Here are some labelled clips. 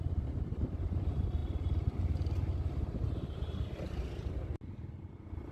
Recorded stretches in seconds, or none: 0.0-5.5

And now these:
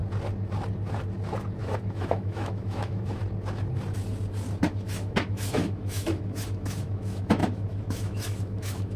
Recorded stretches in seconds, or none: 0.0-1.6; 3.2-4.6

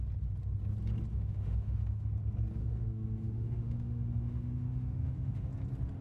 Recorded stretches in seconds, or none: 0.0-1.1; 2.1-2.6; 5.5-6.0

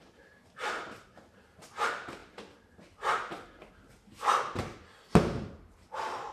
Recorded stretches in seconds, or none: 0.0-6.3

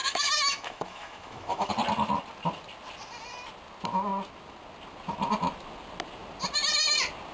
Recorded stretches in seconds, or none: 1.7-7.3

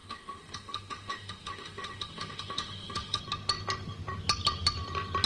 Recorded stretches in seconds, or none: 3.2-5.3